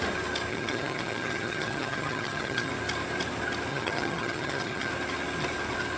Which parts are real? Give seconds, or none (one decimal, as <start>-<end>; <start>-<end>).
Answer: 0.0-0.5; 2.7-3.7; 4.9-6.0